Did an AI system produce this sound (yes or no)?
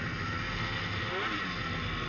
no